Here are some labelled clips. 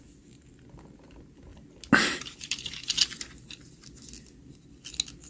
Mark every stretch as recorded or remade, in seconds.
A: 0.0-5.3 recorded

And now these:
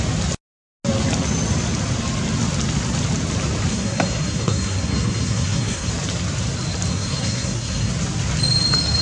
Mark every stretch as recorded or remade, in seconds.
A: 0.0-3.7 recorded; 3.7-5.9 remade; 5.9-6.9 recorded; 6.9-7.9 remade; 7.9-9.0 recorded

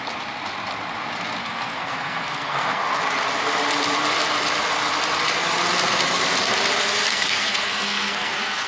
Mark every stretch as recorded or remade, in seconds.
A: 0.0-1.4 recorded; 1.4-3.0 remade; 3.0-7.1 recorded; 7.1-8.7 remade